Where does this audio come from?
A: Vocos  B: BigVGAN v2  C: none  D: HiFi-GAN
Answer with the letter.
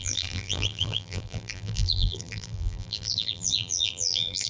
B